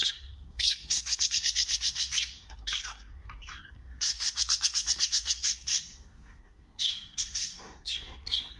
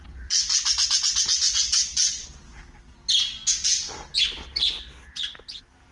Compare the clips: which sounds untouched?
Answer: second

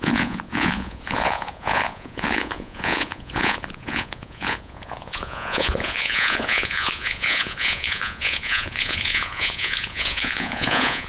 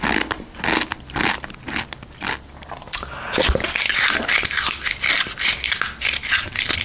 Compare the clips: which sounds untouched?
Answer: second